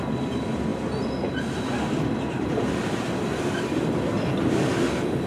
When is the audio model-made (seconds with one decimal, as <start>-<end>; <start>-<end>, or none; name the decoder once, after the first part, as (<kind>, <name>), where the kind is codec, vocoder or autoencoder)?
none